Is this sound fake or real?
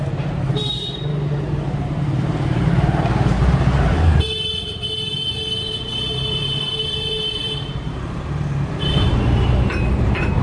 fake